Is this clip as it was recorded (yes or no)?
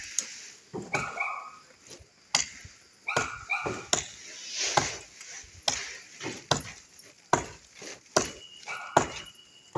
yes